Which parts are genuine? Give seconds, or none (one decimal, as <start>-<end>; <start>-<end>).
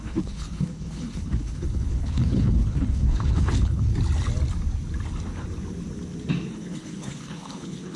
3.9-6.5